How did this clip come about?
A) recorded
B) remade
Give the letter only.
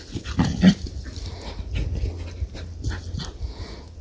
A